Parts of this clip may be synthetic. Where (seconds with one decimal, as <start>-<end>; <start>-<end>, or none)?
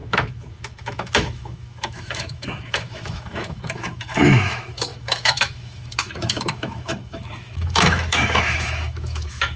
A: 0.0-9.6